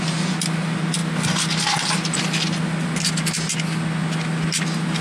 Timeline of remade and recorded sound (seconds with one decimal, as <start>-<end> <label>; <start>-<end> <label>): 0.0-5.0 recorded